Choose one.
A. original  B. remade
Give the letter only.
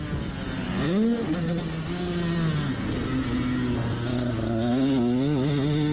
A